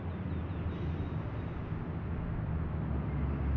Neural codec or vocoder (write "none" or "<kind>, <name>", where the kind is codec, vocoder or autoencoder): none